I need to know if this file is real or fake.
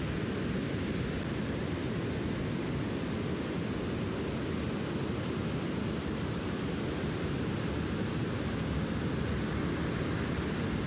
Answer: real